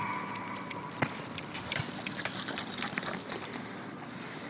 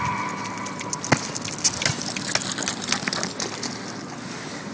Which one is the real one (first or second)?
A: second